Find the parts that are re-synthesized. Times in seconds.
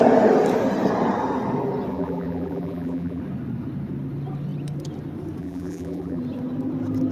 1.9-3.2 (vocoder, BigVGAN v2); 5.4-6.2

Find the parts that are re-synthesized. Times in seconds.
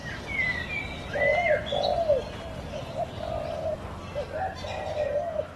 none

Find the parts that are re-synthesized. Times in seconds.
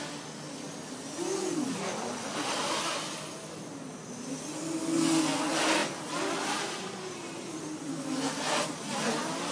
none